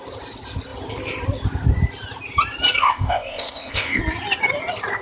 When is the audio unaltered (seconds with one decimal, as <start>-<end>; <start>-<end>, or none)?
0.0-2.8; 4.0-5.0

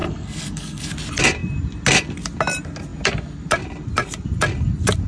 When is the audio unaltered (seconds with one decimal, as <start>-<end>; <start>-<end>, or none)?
0.9-5.1

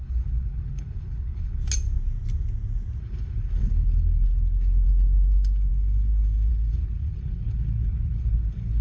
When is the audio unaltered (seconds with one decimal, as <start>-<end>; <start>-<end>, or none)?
1.6-3.0

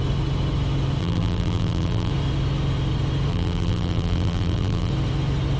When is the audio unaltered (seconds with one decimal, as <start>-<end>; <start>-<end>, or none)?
0.0-1.0; 2.1-3.3; 4.9-5.6

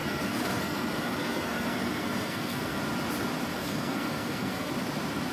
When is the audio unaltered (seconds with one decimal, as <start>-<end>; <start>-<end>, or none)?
2.8-3.5; 4.7-5.3

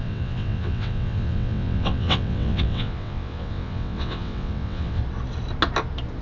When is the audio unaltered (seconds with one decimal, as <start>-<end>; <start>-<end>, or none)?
5.0-6.2